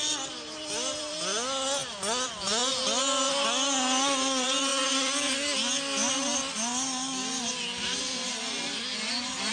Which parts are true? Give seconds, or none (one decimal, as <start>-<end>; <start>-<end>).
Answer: 0.0-9.5

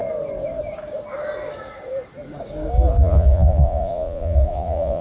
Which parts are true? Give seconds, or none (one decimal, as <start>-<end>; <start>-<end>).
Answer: 0.0-3.0

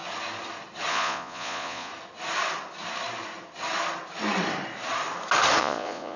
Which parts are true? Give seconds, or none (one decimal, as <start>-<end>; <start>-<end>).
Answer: 0.0-0.9; 1.9-5.6

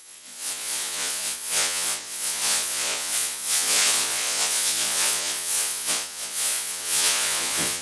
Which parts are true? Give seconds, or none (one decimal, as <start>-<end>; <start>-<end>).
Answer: none

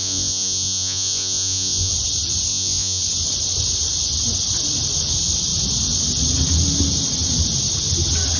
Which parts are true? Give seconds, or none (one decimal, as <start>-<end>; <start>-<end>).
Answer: 1.9-2.5; 3.0-8.4